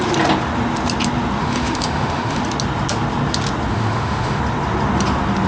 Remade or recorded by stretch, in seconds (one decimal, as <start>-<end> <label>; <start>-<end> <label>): 0.0-1.4 recorded; 1.4-2.4 remade; 2.4-3.7 recorded; 3.7-4.4 remade; 4.4-5.5 recorded